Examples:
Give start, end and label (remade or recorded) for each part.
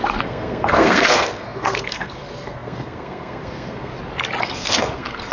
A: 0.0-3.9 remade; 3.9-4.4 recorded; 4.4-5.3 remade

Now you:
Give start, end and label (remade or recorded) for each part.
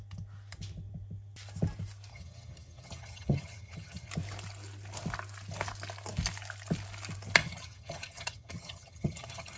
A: 0.0-2.1 recorded; 2.1-4.1 remade; 4.1-7.4 recorded; 7.4-9.6 remade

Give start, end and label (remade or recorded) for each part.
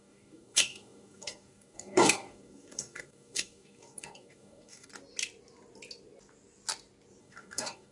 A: 0.0-4.9 remade; 4.9-7.2 recorded; 7.2-7.9 remade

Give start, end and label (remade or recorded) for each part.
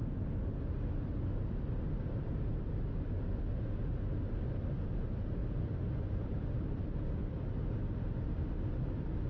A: 0.0-5.4 recorded; 5.4-7.5 remade; 7.5-9.3 recorded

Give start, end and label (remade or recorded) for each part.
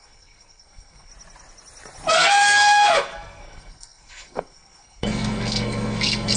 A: 0.0-1.1 remade; 1.1-2.1 recorded; 2.1-6.4 remade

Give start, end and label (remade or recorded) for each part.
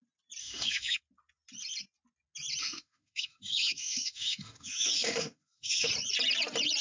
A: 0.0-0.4 recorded; 0.4-1.0 remade; 1.0-2.6 recorded; 2.6-5.9 remade; 5.9-6.8 recorded